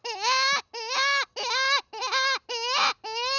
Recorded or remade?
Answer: recorded